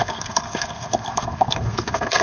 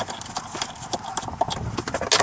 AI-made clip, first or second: first